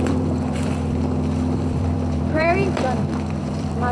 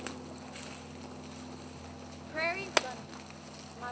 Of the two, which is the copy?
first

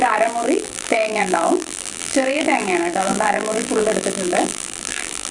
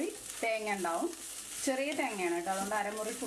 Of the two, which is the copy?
first